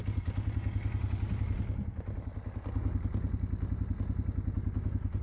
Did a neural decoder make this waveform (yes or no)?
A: no